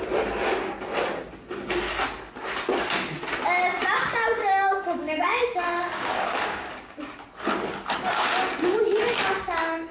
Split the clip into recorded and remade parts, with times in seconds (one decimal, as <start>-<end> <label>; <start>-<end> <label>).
0.0-4.4 recorded; 4.4-7.0 remade; 7.0-9.9 recorded